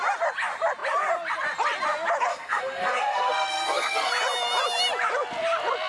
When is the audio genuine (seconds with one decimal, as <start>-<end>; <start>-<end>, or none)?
0.0-2.3; 4.1-5.9